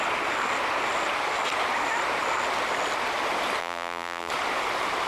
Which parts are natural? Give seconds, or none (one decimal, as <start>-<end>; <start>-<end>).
0.0-3.6; 4.3-5.1